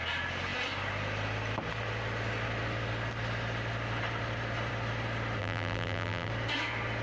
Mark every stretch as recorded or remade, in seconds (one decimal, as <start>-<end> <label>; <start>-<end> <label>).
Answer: 0.0-5.4 recorded; 5.4-6.3 remade; 6.3-7.0 recorded

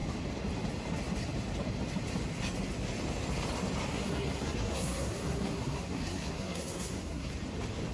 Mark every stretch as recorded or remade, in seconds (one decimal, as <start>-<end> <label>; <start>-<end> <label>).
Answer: 0.0-3.9 recorded; 3.9-7.3 remade; 7.3-7.9 recorded